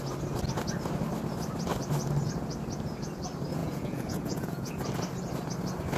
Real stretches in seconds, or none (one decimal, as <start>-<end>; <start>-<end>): 0.0-3.6; 4.7-6.0